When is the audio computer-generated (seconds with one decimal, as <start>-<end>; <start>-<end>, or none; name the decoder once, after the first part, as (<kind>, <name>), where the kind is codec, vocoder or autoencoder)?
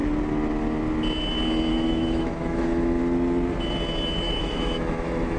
1.7-3.0 (autoencoder, DAC-VAE); 4.4-5.4